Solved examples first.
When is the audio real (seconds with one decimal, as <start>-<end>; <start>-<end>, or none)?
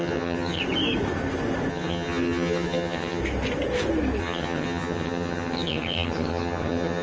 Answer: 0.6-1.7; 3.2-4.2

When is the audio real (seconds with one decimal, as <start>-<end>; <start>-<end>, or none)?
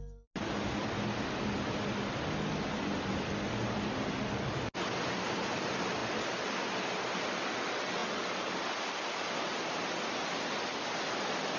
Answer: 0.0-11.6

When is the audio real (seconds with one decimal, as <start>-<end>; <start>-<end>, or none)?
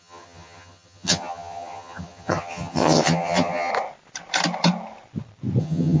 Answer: 3.7-5.6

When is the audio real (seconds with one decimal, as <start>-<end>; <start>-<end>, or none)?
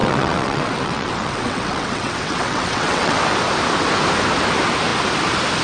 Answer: 3.2-5.6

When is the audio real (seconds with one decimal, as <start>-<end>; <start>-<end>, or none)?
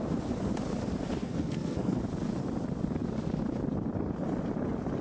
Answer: 0.0-1.2; 2.0-5.0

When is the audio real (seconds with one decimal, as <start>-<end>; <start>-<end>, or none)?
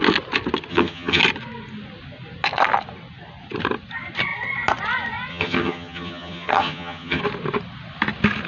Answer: 0.0-0.7; 1.2-5.3; 7.2-8.5